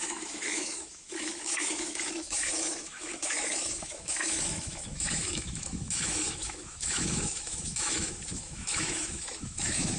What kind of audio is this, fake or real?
fake